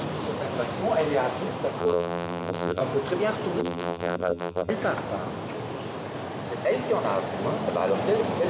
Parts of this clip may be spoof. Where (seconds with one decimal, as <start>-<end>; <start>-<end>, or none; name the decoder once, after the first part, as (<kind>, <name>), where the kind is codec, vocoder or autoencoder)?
1.8-2.8 (vocoder, BigVGAN v2); 3.6-4.7